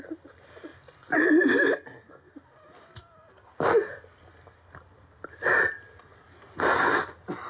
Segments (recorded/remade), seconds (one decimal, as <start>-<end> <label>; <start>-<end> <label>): 0.0-0.7 recorded; 0.7-1.3 remade; 1.3-3.8 recorded; 3.8-5.6 remade; 5.6-7.5 recorded

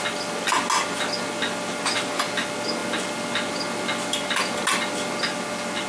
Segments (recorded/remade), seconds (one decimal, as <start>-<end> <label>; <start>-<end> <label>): 0.0-5.9 recorded

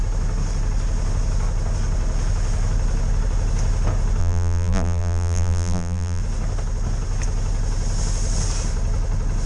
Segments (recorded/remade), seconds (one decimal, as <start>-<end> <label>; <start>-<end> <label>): 0.0-4.2 recorded; 4.2-6.2 remade; 6.2-9.5 recorded

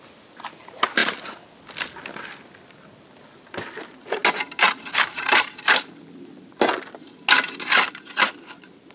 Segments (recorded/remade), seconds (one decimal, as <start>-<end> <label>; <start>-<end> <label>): 0.0-8.9 recorded